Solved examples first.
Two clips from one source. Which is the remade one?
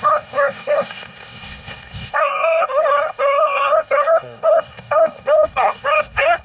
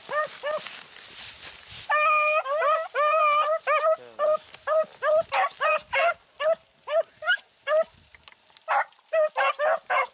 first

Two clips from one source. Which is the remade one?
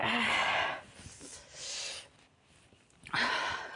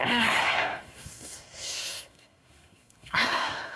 second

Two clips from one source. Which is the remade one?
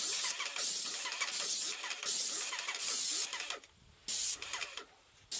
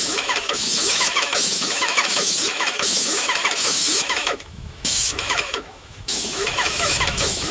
second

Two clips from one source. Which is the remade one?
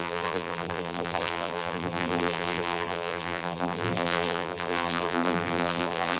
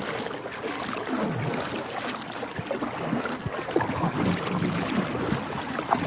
first